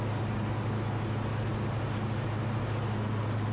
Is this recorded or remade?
recorded